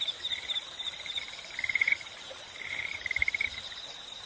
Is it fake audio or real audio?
fake